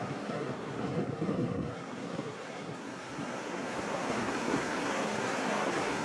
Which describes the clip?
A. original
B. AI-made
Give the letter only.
B